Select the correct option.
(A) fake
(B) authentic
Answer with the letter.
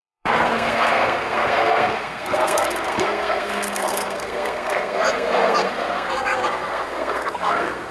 A